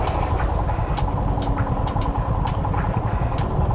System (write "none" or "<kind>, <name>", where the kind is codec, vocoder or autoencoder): none